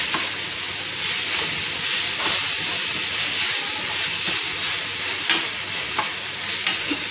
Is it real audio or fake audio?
real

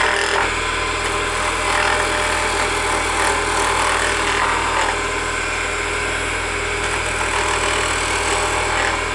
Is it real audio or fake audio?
real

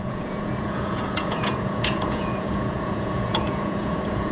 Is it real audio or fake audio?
fake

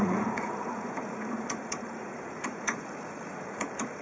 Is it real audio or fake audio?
fake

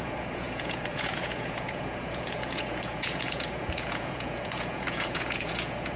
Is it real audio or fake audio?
fake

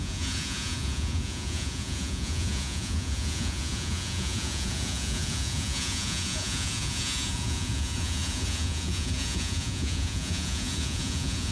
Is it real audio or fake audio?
fake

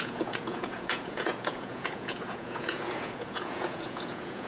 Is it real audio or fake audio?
fake